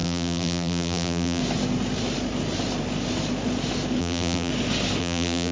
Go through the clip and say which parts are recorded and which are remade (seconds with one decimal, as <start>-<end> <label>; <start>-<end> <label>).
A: 0.0-1.4 remade; 1.4-4.0 recorded; 4.0-4.5 remade; 4.5-5.0 recorded; 5.0-5.5 remade